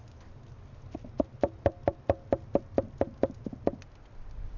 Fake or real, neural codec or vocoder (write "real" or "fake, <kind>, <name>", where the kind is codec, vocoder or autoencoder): real